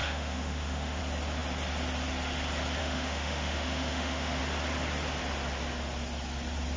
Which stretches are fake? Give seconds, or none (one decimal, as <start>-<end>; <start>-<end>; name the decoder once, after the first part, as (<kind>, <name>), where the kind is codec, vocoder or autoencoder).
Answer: 0.0-1.0 (autoencoder, DAC-VAE); 2.8-4.4